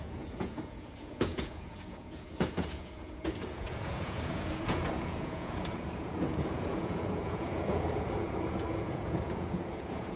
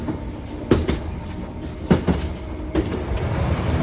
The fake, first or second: first